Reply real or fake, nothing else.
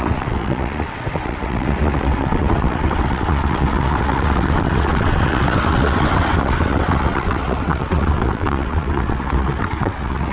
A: fake